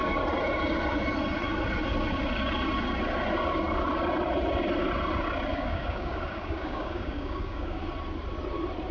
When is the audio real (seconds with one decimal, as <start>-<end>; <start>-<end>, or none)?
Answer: 0.0-5.5; 7.8-8.9